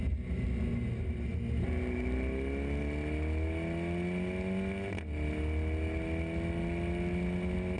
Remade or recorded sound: recorded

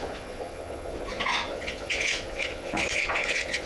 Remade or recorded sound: remade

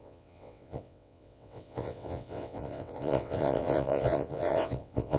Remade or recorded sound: remade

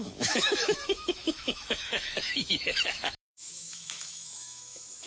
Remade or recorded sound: remade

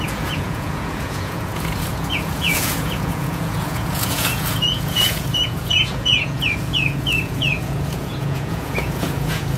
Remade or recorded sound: remade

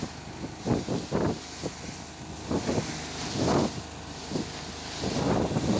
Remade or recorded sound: recorded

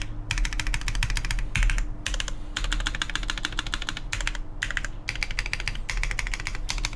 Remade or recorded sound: recorded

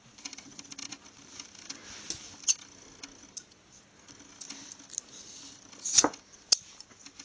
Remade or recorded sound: recorded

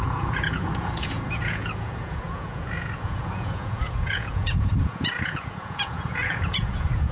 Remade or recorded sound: remade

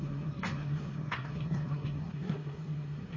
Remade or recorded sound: remade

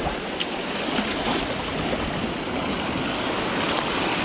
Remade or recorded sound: recorded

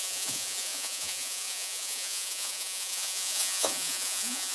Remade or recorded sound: remade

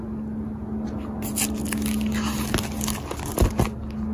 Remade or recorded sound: recorded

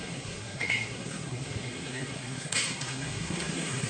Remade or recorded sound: remade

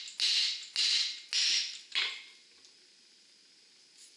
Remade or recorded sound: recorded